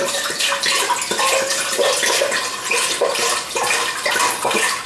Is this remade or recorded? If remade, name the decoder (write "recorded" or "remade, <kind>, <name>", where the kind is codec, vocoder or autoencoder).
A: remade, vocoder, BigVGAN v2